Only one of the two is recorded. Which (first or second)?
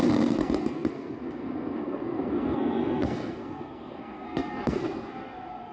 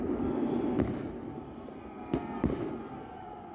second